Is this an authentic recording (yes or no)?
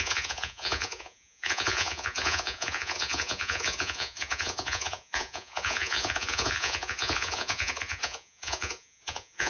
no